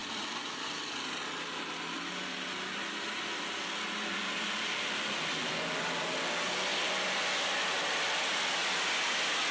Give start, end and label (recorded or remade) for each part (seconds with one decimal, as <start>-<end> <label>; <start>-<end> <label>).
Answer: 0.0-9.5 recorded